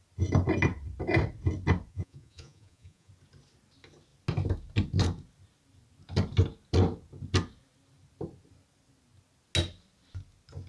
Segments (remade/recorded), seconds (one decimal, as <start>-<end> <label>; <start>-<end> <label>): 0.0-1.9 recorded; 1.9-3.1 remade; 3.1-10.7 recorded